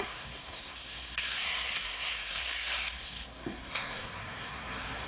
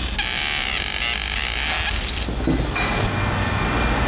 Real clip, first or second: second